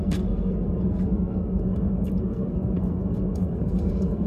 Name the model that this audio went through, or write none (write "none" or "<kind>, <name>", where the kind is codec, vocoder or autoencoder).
codec, SNAC